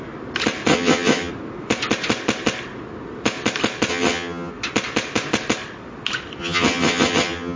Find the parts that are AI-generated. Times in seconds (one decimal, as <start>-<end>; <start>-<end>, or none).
0.7-1.3; 3.9-4.5; 6.4-7.6